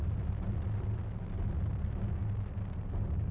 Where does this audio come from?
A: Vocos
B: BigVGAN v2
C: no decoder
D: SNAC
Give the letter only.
C